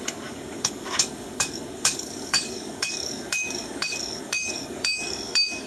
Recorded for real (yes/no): no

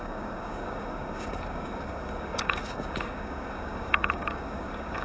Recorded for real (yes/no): no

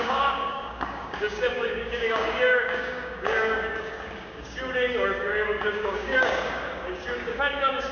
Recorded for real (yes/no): no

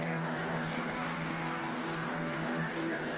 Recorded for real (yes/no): no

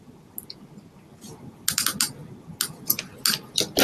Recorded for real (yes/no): yes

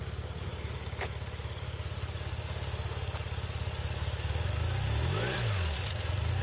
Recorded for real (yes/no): yes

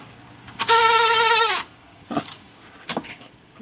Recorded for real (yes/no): no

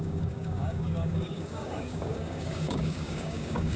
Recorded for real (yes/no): no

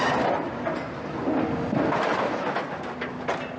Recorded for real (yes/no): yes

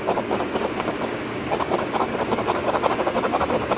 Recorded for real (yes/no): no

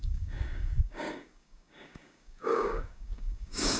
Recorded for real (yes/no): no